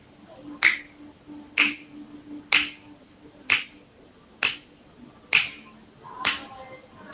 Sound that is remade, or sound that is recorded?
recorded